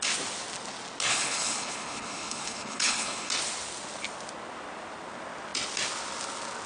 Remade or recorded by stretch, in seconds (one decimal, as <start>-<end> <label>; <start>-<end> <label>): 0.0-1.1 recorded; 1.1-3.3 remade; 3.3-6.7 recorded